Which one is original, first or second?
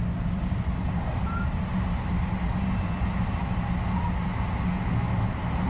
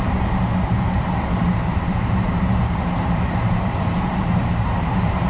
first